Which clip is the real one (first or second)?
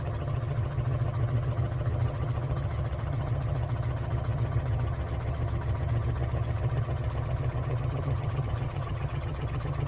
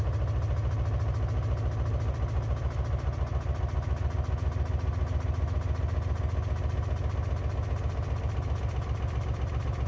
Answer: second